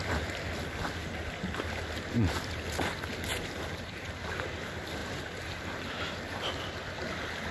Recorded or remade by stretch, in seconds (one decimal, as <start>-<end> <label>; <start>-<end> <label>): 0.0-0.6 remade; 0.6-3.3 recorded; 3.3-4.1 remade; 4.1-7.5 recorded